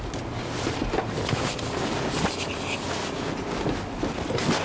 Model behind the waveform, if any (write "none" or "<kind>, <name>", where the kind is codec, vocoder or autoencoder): none